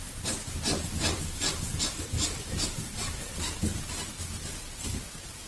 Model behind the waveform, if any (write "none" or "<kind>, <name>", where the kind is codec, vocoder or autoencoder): none